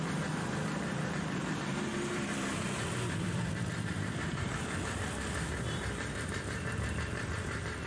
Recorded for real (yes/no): no